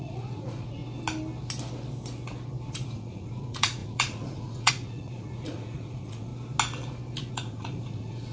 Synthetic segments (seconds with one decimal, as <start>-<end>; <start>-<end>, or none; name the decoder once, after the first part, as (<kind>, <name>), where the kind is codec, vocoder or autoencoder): 0.0-0.8 (vocoder, Vocos); 2.7-6.3; 7.3-8.3